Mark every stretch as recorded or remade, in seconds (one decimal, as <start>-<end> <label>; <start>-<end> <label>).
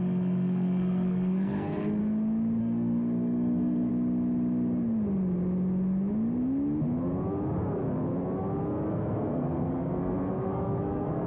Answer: 0.0-2.0 remade; 2.0-2.6 recorded; 2.6-3.9 remade; 3.9-8.9 recorded; 8.9-11.3 remade